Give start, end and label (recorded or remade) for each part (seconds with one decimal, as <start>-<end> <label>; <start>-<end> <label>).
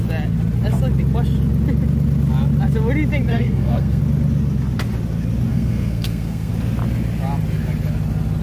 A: 0.0-3.3 recorded; 3.3-4.0 remade; 4.0-5.5 recorded; 5.5-6.5 remade; 6.5-8.4 recorded